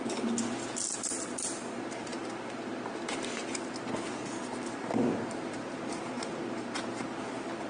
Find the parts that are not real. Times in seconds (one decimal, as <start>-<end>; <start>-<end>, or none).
4.5-6.2